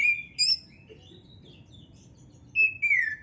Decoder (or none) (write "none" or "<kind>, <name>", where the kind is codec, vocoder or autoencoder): none